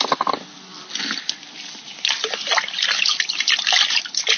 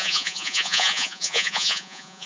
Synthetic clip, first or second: second